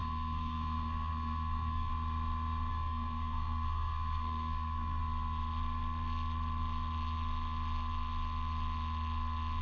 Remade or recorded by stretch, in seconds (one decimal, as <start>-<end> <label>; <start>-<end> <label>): 0.0-1.9 remade; 1.9-2.7 recorded; 2.7-5.0 remade; 5.0-9.6 recorded